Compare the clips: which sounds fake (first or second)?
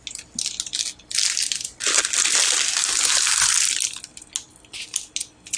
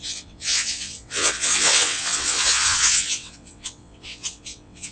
second